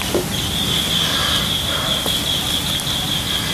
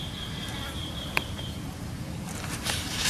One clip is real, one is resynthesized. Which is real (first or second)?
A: first